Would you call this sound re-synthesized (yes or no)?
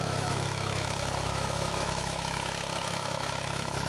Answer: yes